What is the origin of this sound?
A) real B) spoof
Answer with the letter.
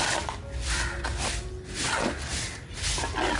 A